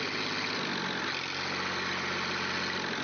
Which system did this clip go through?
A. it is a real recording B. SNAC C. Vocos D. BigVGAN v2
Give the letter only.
A